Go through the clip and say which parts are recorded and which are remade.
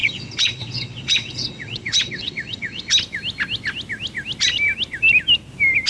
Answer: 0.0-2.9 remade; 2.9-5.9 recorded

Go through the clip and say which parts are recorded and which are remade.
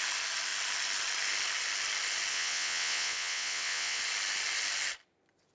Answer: 0.0-2.3 recorded; 2.3-4.0 remade; 4.0-5.5 recorded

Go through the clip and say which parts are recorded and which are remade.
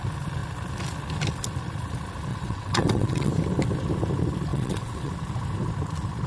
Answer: 0.0-2.3 recorded; 2.3-3.3 remade; 3.3-4.5 recorded; 4.5-5.1 remade; 5.1-6.3 recorded